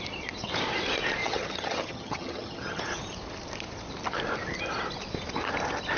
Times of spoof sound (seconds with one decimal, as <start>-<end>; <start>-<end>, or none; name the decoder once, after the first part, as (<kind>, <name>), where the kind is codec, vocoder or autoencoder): 1.2-2.8 (vocoder, HiFi-GAN)